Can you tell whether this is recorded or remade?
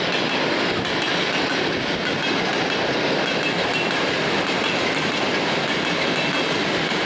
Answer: recorded